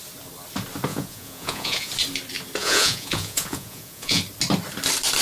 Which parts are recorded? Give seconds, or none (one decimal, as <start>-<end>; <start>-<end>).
0.0-0.9; 1.9-2.6; 4.2-5.2